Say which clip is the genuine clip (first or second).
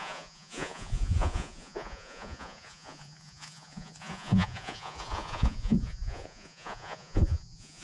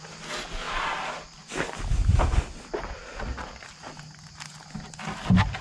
second